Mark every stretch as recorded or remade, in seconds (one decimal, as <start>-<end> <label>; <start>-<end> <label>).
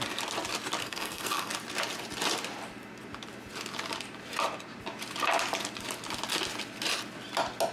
0.0-0.8 recorded; 0.8-1.5 remade; 1.5-7.7 recorded